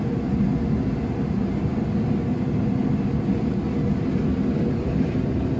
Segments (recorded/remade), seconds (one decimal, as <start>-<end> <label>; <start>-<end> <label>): 0.0-5.6 recorded